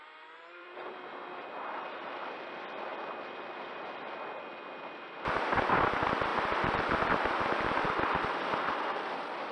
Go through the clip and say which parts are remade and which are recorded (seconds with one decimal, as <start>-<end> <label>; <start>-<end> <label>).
0.0-2.9 remade; 2.9-4.9 recorded; 4.9-9.5 remade